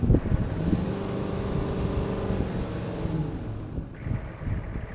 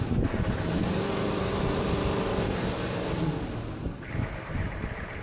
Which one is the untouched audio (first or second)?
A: first